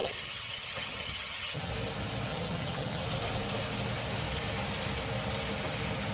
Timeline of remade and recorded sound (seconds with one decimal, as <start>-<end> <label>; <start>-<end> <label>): 0.0-1.7 remade; 1.7-2.3 recorded; 2.3-3.0 remade; 3.0-6.1 recorded